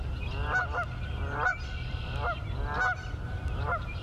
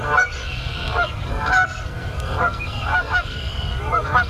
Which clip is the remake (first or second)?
second